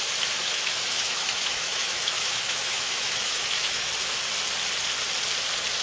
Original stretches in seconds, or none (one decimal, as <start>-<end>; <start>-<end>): 0.0-0.4; 3.9-5.8

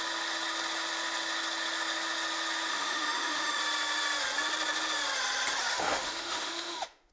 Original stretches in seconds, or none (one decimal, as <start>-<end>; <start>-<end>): 0.0-2.7; 3.6-5.7

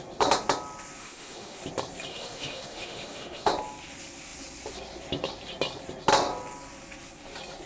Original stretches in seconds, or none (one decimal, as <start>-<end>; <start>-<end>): 0.0-1.0; 1.6-2.1; 3.5-7.7

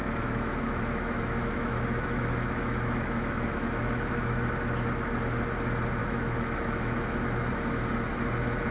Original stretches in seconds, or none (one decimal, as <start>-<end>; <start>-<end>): 4.5-6.0; 7.5-8.7

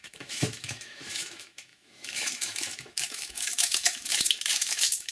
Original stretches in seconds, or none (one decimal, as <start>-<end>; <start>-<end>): none